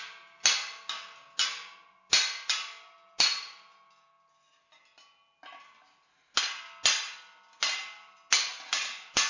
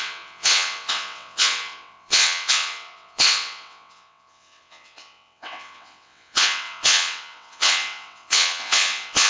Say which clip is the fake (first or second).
second